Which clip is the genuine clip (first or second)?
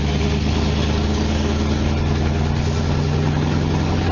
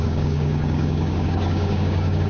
first